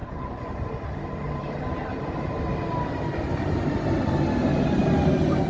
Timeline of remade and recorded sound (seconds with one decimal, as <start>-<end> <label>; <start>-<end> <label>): 0.0-0.5 remade; 0.5-5.5 recorded